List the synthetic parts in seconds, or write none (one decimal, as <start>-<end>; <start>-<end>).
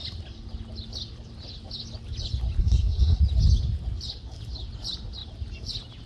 2.6-3.2